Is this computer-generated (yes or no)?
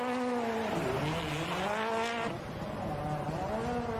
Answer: no